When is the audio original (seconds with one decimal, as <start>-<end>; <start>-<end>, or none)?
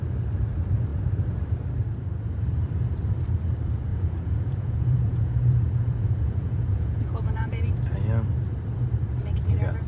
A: 0.0-3.9; 7.7-9.9